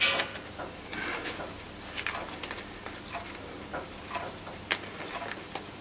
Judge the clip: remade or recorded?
recorded